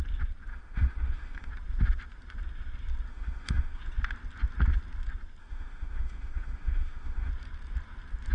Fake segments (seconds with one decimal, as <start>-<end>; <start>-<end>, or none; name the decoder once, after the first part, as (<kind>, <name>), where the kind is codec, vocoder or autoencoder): 0.5-1.5 (autoencoder, DAC-VAE); 3.1-3.8; 5.4-7.3